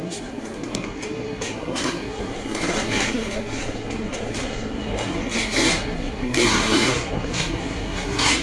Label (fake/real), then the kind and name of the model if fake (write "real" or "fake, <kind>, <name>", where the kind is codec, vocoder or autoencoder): fake, codec, SNAC